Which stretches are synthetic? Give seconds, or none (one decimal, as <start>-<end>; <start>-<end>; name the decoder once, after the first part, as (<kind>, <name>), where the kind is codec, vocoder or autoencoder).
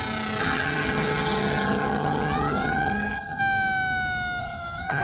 0.4-3.4 (vocoder, HiFi-GAN); 4.4-5.0